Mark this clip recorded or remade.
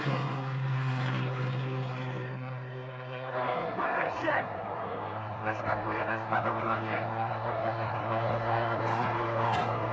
remade